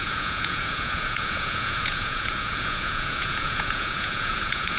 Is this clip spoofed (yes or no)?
yes